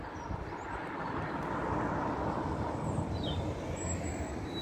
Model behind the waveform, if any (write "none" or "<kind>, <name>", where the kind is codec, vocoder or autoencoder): none